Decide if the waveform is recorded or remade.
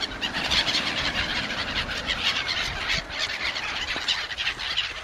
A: recorded